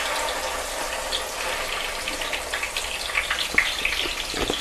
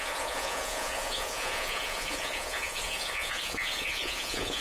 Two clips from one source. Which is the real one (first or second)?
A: first